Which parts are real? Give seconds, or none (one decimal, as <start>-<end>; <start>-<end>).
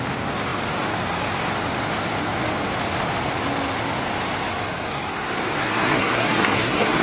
0.0-5.6